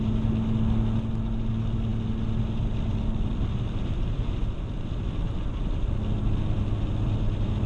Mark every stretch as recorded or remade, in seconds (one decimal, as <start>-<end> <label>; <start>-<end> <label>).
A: 0.0-7.7 recorded